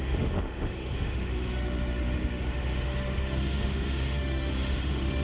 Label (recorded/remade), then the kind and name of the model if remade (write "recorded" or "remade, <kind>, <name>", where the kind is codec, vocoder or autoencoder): remade, autoencoder, DAC-VAE